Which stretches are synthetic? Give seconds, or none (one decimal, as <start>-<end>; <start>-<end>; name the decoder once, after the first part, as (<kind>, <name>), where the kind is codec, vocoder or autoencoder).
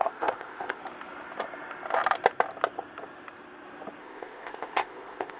0.0-0.8 (codec, ZipCodec); 4.0-5.4